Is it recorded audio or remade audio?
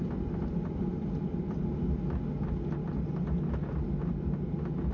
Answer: recorded